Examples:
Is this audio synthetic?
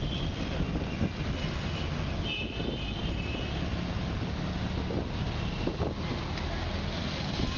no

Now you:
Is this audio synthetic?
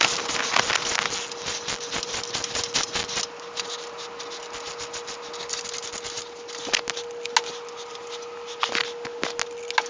no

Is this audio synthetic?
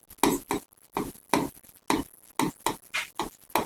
no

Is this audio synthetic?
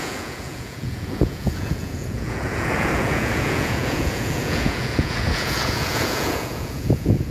yes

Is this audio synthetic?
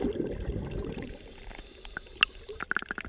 no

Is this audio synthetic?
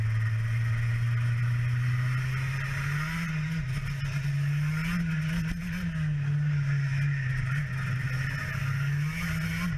no